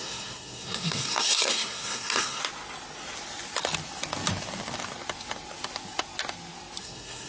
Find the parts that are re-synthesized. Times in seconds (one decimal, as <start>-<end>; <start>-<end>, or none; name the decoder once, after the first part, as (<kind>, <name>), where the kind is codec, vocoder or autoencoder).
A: 0.0-2.4 (codec, SNAC); 6.8-7.3